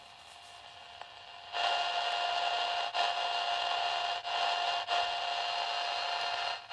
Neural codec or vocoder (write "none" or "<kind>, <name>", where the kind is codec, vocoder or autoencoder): none